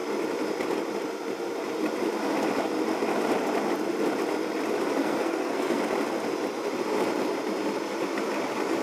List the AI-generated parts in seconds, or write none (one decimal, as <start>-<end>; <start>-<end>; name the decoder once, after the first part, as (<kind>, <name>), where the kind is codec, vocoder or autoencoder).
5.0-5.8 (codec, SNAC)